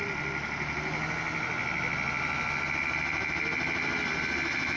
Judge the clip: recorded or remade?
recorded